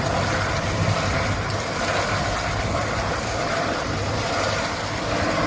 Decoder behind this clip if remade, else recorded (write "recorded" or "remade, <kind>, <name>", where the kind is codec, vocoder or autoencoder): recorded